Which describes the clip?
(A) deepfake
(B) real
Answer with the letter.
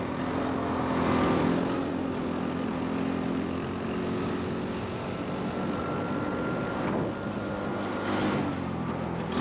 B